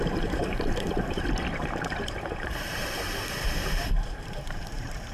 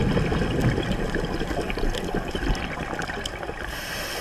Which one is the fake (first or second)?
first